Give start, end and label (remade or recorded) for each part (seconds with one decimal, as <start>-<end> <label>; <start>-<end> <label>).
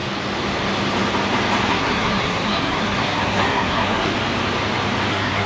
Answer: 0.0-1.7 recorded; 1.7-4.1 remade; 4.1-5.1 recorded; 5.1-5.5 remade